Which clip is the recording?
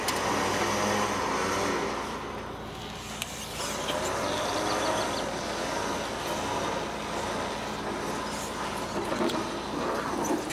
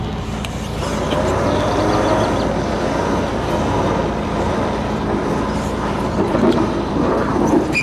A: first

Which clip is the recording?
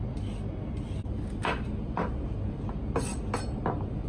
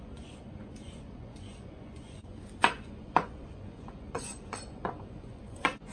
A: first